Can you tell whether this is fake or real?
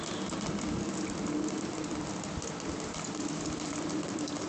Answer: real